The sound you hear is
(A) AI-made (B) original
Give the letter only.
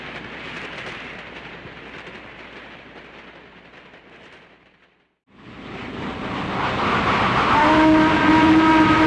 B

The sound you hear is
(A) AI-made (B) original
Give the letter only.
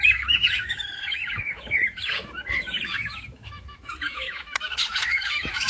A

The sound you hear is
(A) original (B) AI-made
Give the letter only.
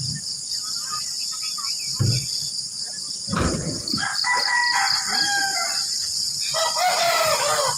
A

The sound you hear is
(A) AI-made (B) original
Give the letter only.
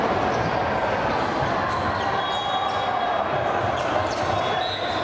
B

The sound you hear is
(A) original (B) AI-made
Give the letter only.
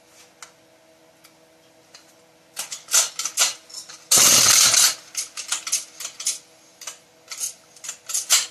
A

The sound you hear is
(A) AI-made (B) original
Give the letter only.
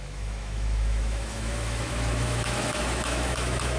A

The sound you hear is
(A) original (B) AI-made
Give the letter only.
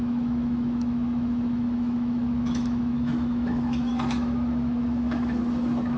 B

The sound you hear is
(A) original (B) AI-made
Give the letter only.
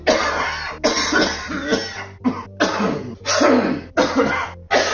A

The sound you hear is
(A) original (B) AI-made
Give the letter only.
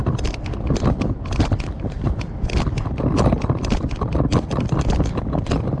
A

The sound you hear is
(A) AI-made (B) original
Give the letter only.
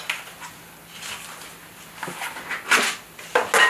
B